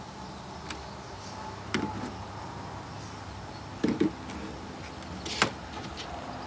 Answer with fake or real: real